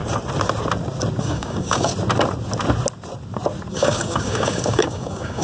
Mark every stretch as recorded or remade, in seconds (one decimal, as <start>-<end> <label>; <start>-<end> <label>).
0.0-1.2 recorded; 1.2-1.9 remade; 1.9-3.7 recorded; 3.7-5.4 remade